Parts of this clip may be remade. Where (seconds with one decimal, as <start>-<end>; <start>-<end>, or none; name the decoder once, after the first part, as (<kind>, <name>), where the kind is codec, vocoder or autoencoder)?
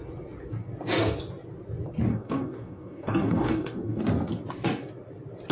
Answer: 2.1-4.0 (codec, DAC)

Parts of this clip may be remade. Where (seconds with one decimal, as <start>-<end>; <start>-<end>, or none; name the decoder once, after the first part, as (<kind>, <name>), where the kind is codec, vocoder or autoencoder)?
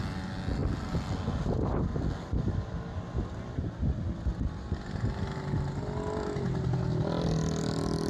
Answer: none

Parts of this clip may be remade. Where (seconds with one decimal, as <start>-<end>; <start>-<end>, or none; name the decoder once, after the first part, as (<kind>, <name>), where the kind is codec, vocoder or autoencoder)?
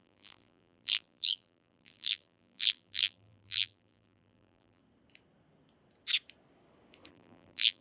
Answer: 0.0-4.8 (vocoder, BigVGAN v2); 7.1-7.8